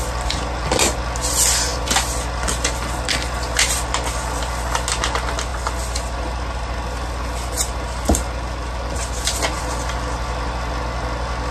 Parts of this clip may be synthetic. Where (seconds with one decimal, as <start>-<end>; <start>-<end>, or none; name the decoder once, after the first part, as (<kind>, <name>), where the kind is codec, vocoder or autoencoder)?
none